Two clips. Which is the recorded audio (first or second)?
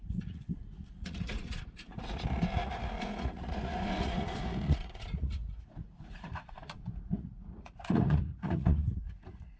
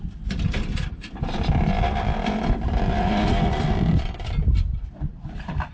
second